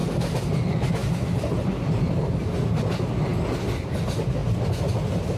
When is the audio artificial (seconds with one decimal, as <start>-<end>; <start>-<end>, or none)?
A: none